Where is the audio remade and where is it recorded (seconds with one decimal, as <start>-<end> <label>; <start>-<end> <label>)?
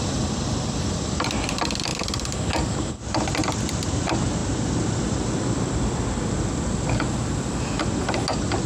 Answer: 0.0-8.7 recorded